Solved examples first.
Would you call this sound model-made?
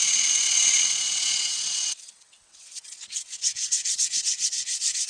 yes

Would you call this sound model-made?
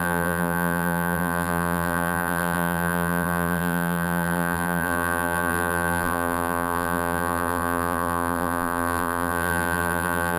yes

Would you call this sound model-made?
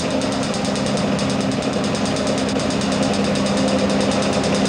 no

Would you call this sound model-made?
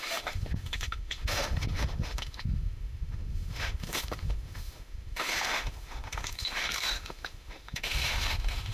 yes